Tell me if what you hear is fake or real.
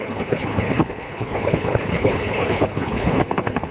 fake